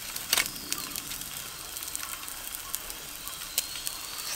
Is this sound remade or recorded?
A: recorded